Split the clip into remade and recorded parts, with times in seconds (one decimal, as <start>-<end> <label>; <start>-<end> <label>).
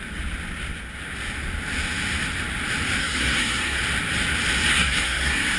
0.0-3.0 recorded; 3.0-3.8 remade; 3.8-4.7 recorded; 4.7-5.6 remade